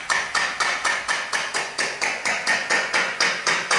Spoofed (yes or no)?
yes